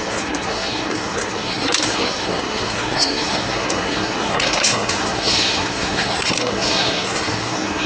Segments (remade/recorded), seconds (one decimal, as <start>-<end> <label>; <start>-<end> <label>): 0.0-7.9 remade